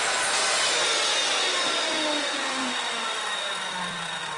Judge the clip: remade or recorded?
recorded